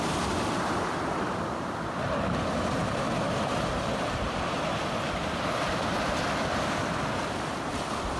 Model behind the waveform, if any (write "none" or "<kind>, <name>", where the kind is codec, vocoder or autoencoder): vocoder, BigVGAN v2